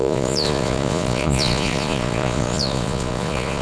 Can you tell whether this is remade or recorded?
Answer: remade